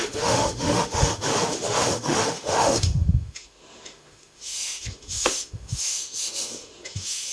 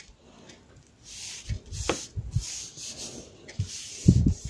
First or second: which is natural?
second